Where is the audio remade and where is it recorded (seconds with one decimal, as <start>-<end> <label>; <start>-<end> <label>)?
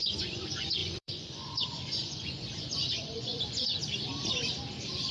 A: 0.0-3.8 remade; 3.8-5.1 recorded